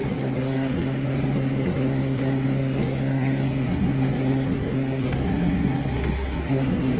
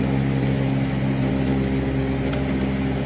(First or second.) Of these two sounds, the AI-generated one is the first